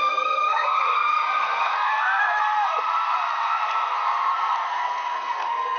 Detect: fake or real fake